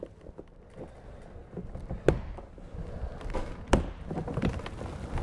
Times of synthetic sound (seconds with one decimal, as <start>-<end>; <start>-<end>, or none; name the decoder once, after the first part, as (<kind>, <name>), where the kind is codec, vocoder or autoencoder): none